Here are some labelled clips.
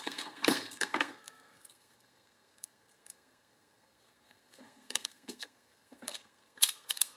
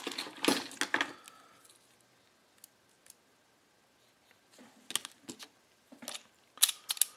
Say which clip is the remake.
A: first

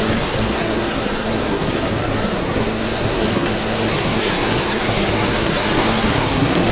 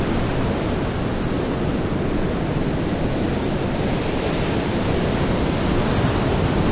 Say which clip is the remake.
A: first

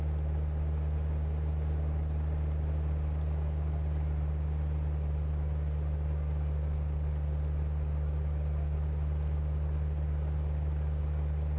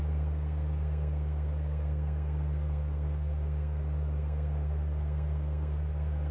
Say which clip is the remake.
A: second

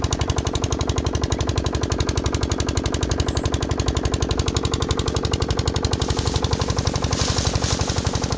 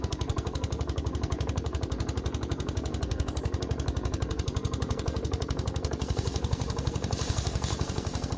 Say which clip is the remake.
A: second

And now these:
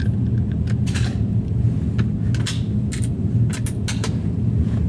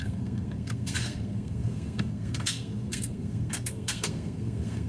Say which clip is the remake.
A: second